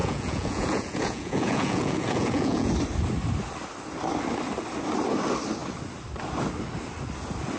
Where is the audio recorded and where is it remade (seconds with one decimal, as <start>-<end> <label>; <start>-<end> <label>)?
0.0-2.7 remade; 2.7-7.6 recorded